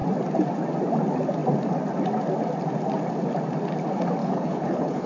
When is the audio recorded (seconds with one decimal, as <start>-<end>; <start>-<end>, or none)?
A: 0.0-4.2

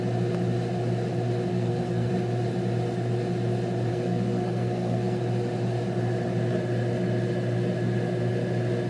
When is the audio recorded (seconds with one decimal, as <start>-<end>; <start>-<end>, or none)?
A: 0.0-1.5; 2.1-3.9; 5.2-8.9

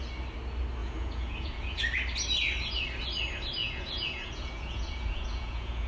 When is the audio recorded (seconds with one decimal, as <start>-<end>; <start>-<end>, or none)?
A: 0.0-0.8; 1.8-3.6